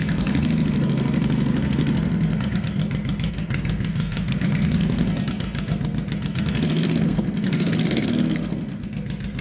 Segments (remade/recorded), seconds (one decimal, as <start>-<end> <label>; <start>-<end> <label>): 0.0-2.8 remade; 2.8-3.3 recorded; 3.3-9.4 remade